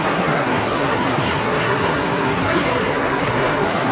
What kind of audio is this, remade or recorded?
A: remade